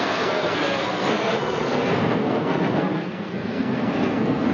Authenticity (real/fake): fake